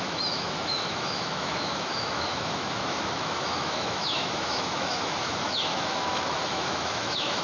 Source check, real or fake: fake